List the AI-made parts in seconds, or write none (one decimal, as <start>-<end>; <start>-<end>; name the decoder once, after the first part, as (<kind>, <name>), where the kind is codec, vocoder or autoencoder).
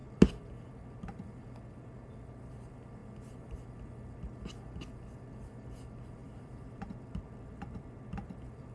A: 6.2-8.0 (vocoder, BigVGAN v2)